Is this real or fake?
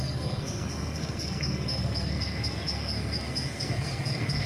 fake